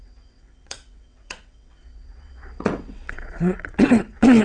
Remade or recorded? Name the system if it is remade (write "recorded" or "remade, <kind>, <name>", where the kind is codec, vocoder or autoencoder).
remade, vocoder, WaveNeXt